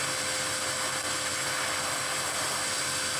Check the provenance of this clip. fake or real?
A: real